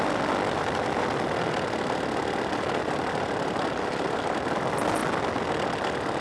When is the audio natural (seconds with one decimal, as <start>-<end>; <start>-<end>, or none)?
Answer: 0.0-6.2